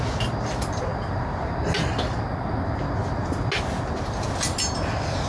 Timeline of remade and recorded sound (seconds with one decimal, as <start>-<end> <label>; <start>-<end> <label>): 0.0-5.3 recorded